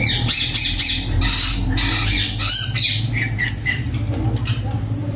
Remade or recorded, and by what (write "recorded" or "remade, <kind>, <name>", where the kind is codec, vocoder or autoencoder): recorded